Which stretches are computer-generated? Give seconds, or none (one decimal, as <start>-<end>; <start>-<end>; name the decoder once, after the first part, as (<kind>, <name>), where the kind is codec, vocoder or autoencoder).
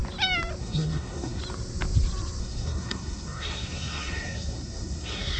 0.6-1.4 (codec, SNAC); 2.4-5.4